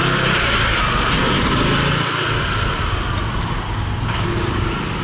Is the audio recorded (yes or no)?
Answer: yes